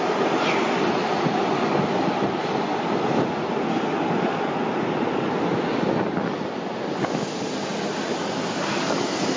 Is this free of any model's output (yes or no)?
yes